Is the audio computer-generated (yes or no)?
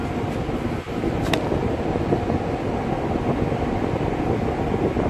no